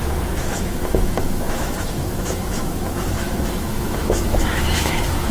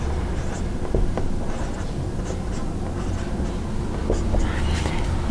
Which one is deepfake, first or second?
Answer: first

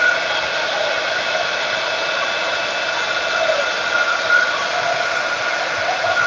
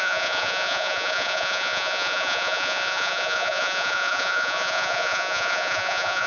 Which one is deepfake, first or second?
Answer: second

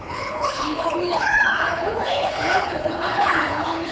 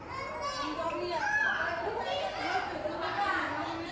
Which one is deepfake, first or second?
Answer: first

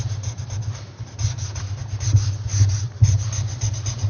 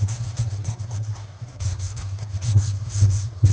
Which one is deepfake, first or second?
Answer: second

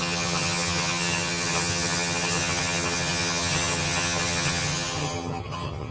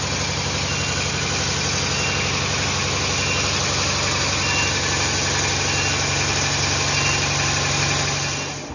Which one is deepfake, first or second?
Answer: first